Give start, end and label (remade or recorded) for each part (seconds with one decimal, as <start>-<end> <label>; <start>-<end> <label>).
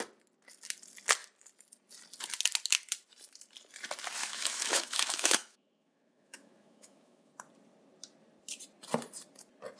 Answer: 0.0-4.2 recorded; 4.2-7.3 remade; 7.3-9.8 recorded